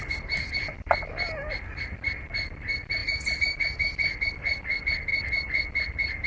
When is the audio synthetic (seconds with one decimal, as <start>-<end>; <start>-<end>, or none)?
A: none